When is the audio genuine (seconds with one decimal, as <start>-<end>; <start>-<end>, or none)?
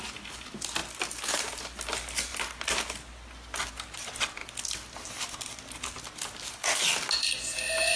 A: 0.0-8.0